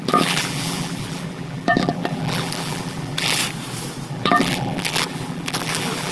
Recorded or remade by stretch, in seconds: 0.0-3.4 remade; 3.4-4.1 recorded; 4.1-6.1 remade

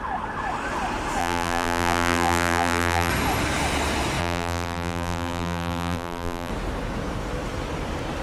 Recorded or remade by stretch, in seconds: 0.0-1.2 recorded; 1.2-3.1 remade; 3.1-4.2 recorded; 4.2-6.5 remade; 6.5-8.2 recorded

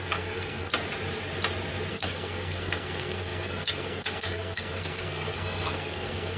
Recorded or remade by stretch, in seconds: 0.0-0.7 remade; 0.7-1.9 recorded; 1.9-6.4 remade